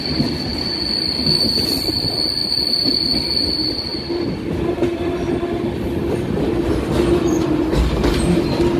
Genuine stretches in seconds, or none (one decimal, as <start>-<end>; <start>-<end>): 0.0-0.5; 1.9-2.4; 3.1-8.8